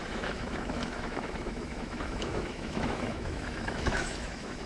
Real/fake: fake